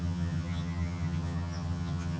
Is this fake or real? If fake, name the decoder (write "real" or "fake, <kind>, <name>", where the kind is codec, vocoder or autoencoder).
fake, vocoder, HiFi-GAN